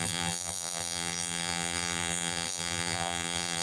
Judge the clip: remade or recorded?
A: remade